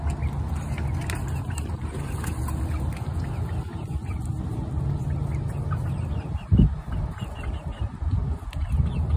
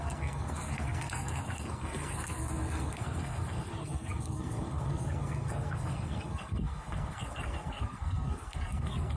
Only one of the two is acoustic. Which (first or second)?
first